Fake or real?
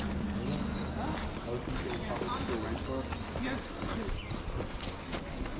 real